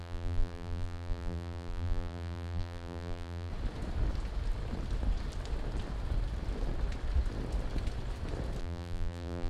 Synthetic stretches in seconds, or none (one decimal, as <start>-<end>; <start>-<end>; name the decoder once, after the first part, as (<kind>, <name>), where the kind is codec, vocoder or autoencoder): 0.0-3.5 (vocoder, BigVGAN v2); 8.6-9.5